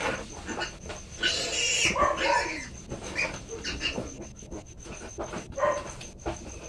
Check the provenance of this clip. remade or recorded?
recorded